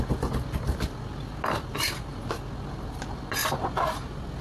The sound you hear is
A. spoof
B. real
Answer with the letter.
B